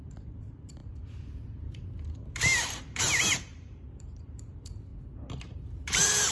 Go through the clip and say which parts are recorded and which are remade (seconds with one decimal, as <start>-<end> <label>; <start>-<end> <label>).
0.0-4.9 remade; 4.9-5.4 recorded; 5.4-6.3 remade